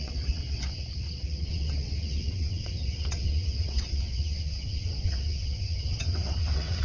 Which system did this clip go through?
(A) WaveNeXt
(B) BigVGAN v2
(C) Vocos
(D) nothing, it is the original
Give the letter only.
A